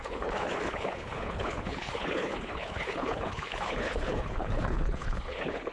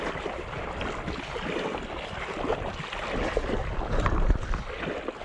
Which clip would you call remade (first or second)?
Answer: first